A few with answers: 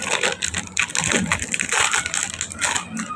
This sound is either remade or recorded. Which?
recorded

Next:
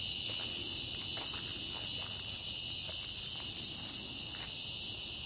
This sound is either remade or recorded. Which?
recorded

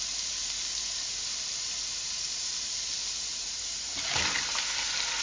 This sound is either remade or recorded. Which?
remade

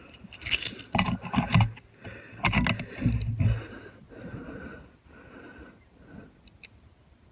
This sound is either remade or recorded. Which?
recorded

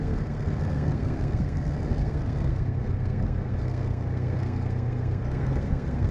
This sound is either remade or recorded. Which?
remade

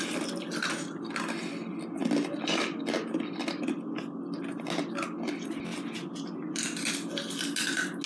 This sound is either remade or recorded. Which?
recorded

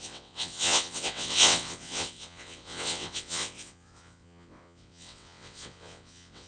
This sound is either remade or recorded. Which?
remade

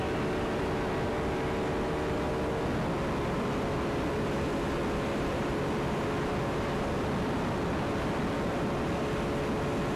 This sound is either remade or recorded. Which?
recorded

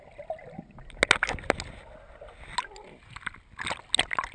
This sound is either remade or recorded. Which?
recorded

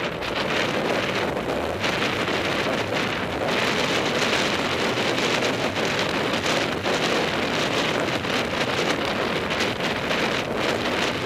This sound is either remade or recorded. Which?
recorded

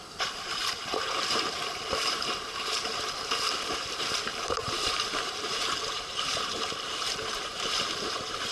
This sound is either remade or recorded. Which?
remade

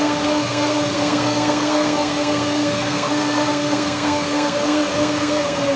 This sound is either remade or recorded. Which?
remade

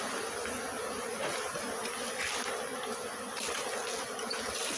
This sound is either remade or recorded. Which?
recorded